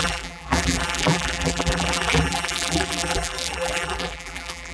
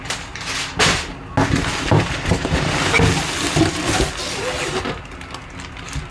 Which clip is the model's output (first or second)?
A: first